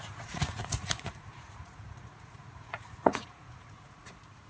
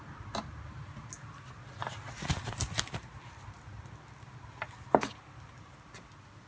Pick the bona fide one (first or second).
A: second